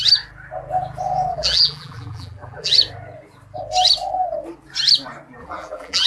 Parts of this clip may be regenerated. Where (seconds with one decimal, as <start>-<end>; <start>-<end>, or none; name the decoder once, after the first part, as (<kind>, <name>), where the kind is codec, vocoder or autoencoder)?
1.3-2.7 (vocoder, BigVGAN v2); 5.4-6.1